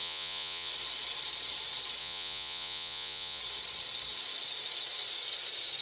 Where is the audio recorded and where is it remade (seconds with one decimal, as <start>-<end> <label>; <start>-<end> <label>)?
0.0-0.7 remade; 0.7-2.0 recorded; 2.0-3.4 remade; 3.4-5.8 recorded